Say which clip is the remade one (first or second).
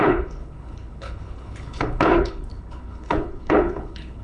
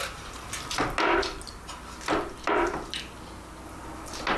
first